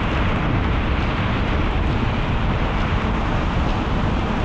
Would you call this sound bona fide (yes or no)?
yes